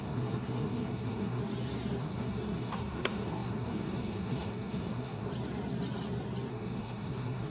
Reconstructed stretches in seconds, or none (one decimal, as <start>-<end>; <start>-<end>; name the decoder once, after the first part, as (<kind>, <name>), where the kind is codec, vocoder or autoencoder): 0.0-1.4 (codec, SNAC); 2.0-5.3; 6.5-7.5